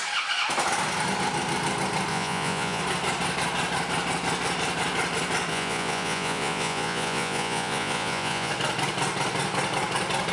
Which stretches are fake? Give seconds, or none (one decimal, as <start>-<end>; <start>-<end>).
2.1-2.8; 5.5-8.5